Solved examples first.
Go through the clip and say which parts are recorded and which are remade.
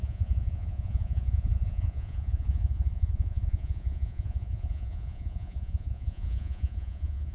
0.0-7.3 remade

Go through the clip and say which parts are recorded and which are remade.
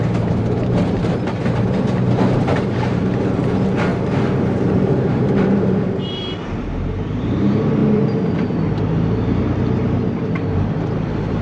0.0-3.9 remade; 3.9-4.4 recorded; 4.4-7.8 remade; 7.8-9.9 recorded; 9.9-11.4 remade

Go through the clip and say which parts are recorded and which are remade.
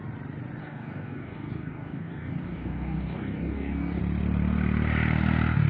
0.0-0.6 recorded; 0.6-4.0 remade; 4.0-5.7 recorded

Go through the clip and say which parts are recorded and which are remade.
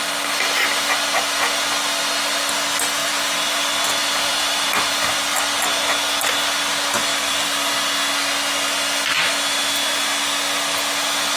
0.0-3.0 recorded; 3.0-3.6 remade; 3.6-4.0 recorded; 4.0-5.3 remade; 5.3-7.1 recorded; 7.1-7.7 remade; 7.7-11.4 recorded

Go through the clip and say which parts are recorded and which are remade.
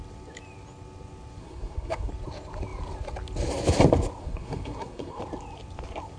0.0-1.4 recorded; 1.4-2.1 remade; 2.1-4.2 recorded; 4.2-5.2 remade; 5.2-6.2 recorded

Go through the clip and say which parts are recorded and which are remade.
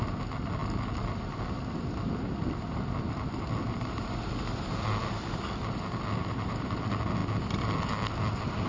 0.0-6.2 recorded; 6.2-6.8 remade; 6.8-8.7 recorded